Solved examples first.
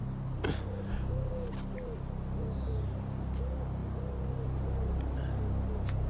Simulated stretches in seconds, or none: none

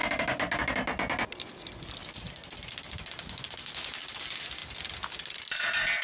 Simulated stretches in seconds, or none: none

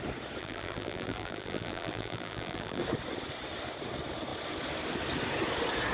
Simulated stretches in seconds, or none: 0.4-2.8 (vocoder, BigVGAN v2)